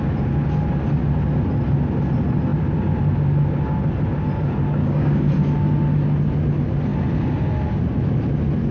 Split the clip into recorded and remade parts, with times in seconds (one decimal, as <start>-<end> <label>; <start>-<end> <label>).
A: 0.0-4.8 recorded; 4.8-5.3 remade; 5.3-8.7 recorded

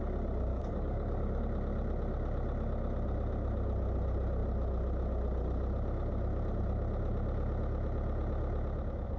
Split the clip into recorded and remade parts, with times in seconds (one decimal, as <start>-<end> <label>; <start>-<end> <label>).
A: 0.0-0.5 recorded; 0.5-1.4 remade; 1.4-9.2 recorded

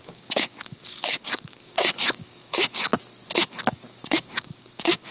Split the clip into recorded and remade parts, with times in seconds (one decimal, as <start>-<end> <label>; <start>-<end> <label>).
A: 0.0-2.9 remade; 2.9-3.5 recorded; 3.5-5.1 remade

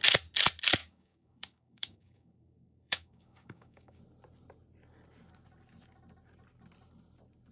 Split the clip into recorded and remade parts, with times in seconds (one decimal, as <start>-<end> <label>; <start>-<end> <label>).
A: 0.0-0.8 recorded; 0.8-4.0 remade; 4.0-7.5 recorded

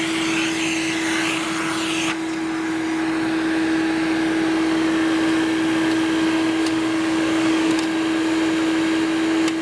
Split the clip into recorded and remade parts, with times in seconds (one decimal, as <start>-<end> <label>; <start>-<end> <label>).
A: 0.0-6.6 recorded; 6.6-7.7 remade; 7.7-9.6 recorded

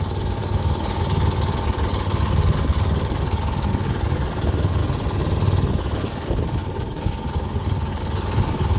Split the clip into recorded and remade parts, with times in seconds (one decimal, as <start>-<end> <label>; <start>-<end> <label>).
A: 0.0-4.8 remade; 4.8-5.7 recorded; 5.7-8.8 remade

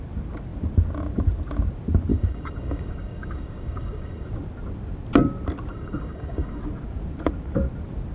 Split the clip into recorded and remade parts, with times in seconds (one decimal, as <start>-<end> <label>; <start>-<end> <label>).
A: 0.0-2.1 recorded; 2.1-4.3 remade; 4.3-5.7 recorded; 5.7-6.6 remade; 6.6-8.1 recorded

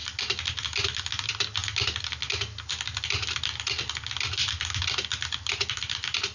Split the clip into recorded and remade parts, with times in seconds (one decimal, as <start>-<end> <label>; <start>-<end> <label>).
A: 0.0-6.3 recorded